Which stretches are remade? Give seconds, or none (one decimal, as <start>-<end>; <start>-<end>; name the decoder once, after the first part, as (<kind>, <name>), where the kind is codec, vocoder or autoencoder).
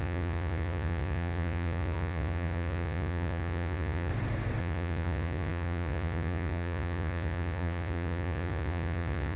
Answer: 0.0-4.1 (vocoder, Vocos); 4.6-9.4